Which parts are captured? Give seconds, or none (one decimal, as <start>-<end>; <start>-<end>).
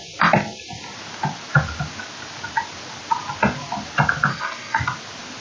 0.0-4.3; 4.8-5.4